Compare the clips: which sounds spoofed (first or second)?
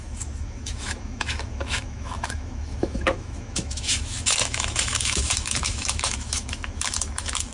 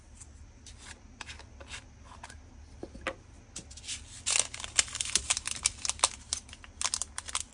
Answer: first